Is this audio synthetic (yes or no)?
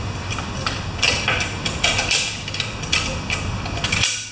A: no